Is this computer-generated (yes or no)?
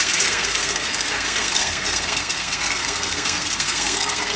yes